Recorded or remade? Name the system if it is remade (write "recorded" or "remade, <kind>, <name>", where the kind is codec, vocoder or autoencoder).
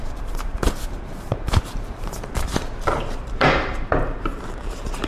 remade, vocoder, BigVGAN v2